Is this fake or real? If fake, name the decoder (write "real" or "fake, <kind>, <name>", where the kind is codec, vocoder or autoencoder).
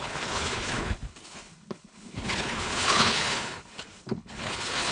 fake, codec, HILCodec